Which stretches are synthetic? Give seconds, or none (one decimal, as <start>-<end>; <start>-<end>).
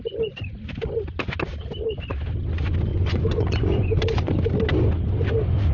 2.9-4.3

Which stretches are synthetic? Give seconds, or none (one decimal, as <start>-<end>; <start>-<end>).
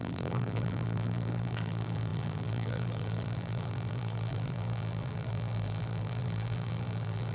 0.0-7.3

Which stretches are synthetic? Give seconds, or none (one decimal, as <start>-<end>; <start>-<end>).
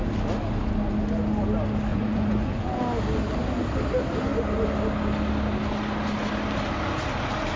1.9-2.8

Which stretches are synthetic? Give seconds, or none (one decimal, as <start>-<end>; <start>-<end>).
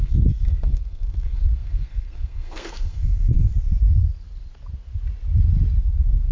0.0-3.5; 5.8-6.3